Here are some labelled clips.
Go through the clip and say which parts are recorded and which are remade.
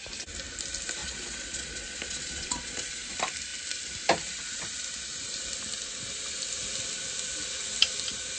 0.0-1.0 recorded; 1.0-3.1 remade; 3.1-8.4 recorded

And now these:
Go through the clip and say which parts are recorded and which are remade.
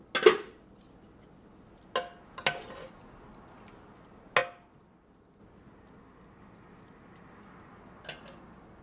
0.0-8.8 recorded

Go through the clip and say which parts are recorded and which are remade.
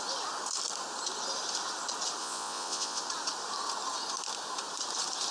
0.0-2.2 recorded; 2.2-3.0 remade; 3.0-5.3 recorded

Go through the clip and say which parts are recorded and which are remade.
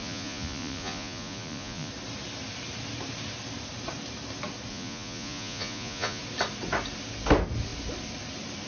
0.0-1.9 remade; 1.9-4.7 recorded; 4.7-6.2 remade; 6.2-8.7 recorded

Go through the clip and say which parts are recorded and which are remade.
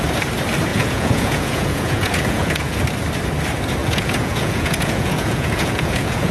0.0-0.7 recorded; 0.7-2.8 remade; 2.8-3.8 recorded; 3.8-6.3 remade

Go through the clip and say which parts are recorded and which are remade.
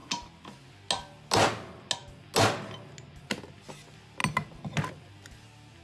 0.0-5.8 recorded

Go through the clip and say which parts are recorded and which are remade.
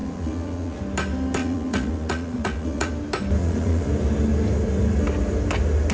0.0-0.8 remade; 0.8-1.4 recorded; 1.4-2.9 remade; 2.9-3.4 recorded; 3.4-3.9 remade; 3.9-5.9 recorded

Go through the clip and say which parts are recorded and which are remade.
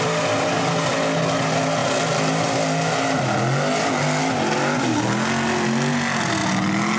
0.0-7.0 recorded